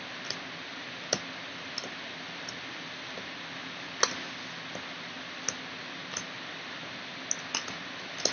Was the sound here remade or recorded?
recorded